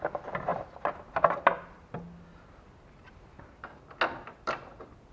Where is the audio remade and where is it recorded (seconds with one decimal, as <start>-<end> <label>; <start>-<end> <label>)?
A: 0.0-5.1 recorded